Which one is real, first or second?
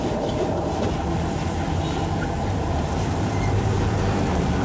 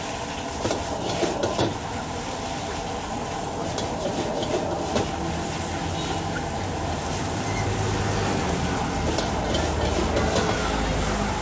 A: second